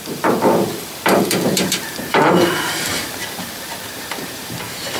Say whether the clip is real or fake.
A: fake